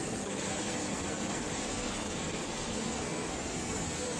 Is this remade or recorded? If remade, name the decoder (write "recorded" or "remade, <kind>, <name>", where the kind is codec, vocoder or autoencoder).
remade, codec, SNAC